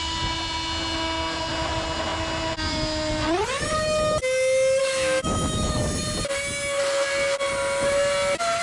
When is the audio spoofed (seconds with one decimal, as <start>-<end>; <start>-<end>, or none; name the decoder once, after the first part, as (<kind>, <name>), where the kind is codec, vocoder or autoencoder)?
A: 4.8-5.8 (autoencoder, DAC-VAE)